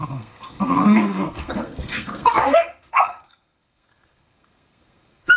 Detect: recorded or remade remade